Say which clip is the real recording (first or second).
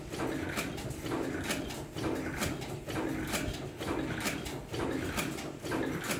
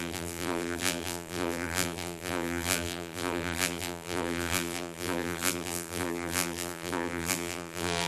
first